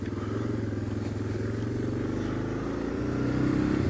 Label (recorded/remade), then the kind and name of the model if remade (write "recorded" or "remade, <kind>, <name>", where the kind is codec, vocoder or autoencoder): recorded